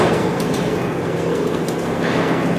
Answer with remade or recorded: remade